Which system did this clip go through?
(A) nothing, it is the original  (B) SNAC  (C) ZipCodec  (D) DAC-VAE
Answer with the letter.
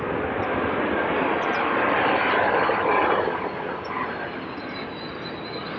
A